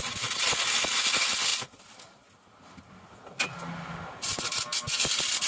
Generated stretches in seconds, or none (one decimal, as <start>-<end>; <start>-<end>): none